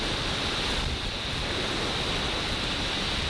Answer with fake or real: real